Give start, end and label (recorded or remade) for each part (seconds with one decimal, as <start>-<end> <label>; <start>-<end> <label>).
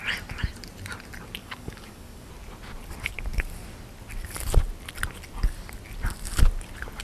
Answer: 0.0-1.4 recorded; 1.4-2.3 remade; 2.3-7.0 recorded